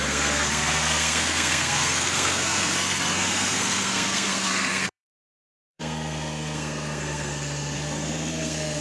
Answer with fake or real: fake